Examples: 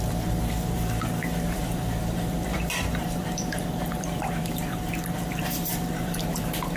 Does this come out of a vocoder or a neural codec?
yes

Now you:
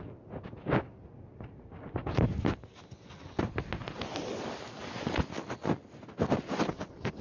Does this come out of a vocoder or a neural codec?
no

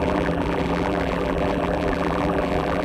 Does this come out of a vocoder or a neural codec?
yes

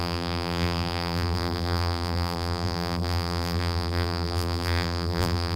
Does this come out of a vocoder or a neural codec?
yes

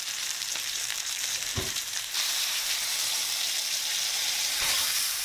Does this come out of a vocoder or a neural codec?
yes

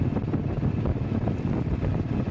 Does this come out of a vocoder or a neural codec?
yes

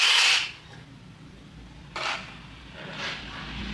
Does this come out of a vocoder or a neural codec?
no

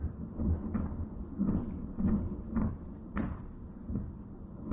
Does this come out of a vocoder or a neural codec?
no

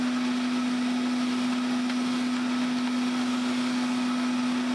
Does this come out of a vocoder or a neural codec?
no